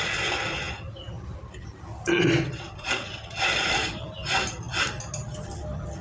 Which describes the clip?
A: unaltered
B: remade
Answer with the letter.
A